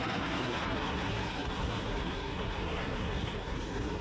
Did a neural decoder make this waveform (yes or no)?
yes